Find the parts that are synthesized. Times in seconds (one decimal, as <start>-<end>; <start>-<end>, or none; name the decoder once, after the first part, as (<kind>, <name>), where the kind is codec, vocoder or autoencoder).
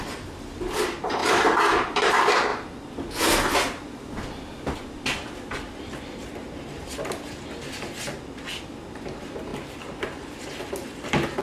1.2-2.1 (vocoder, BigVGAN v2); 9.5-10.2